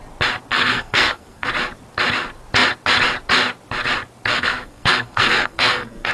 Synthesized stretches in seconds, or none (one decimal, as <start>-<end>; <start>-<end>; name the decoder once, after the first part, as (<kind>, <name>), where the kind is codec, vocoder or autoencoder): 0.5-1.5 (codec, SNAC); 4.3-6.1